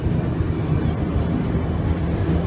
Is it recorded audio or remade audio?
recorded